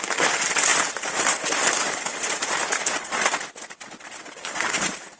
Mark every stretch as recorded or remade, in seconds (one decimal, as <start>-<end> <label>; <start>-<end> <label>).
0.0-5.2 recorded